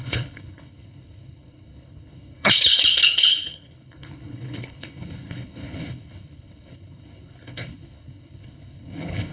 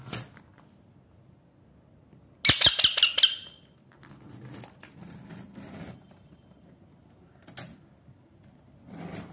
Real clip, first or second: second